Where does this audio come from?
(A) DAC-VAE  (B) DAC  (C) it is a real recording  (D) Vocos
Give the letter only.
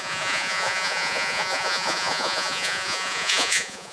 D